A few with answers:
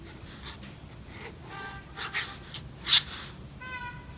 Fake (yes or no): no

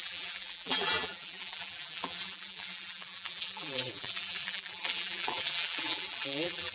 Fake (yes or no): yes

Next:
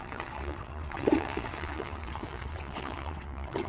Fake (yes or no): yes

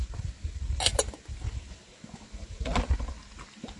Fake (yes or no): no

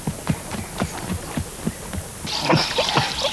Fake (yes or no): no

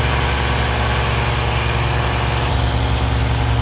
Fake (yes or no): no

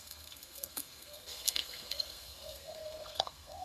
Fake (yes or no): yes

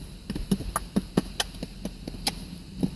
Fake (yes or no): no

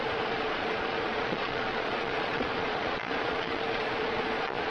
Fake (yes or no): yes